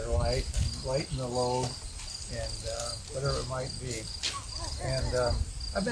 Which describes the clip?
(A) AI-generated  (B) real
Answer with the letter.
B